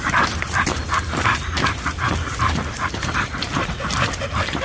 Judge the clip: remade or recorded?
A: remade